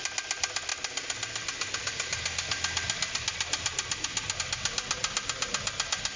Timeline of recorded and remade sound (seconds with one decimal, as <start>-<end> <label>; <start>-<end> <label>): 0.0-6.2 recorded